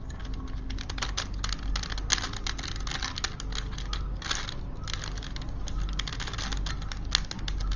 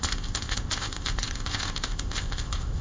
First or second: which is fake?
second